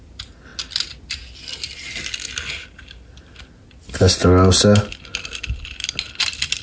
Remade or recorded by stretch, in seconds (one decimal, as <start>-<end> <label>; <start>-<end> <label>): 0.0-6.6 recorded